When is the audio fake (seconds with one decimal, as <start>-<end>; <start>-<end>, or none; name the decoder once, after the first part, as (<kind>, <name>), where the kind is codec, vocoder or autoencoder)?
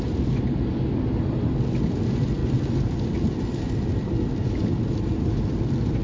none